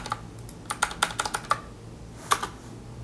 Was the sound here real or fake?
real